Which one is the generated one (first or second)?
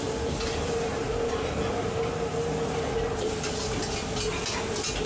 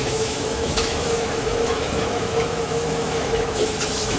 second